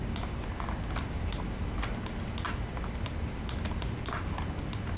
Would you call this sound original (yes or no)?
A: yes